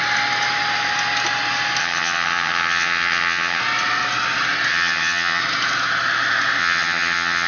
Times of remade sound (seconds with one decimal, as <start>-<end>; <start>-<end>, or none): 1.8-3.6; 4.7-5.4; 6.6-7.5